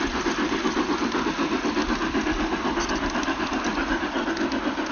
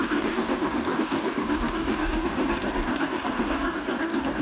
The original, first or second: first